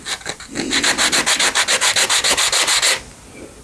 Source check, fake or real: real